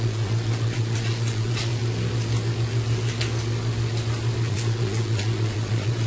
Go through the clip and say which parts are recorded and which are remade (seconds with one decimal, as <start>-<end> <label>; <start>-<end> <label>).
0.0-1.7 remade; 1.7-4.5 recorded; 4.5-6.1 remade